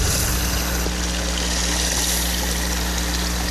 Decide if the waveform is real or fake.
real